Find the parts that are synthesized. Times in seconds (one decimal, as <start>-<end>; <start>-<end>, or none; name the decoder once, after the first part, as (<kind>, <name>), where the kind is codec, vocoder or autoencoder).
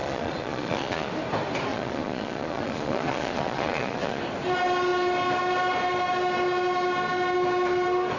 0.0-1.1 (vocoder, Vocos); 1.7-4.2